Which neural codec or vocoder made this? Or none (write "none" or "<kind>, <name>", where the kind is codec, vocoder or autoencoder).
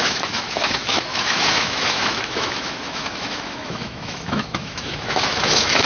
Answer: autoencoder, DAC-VAE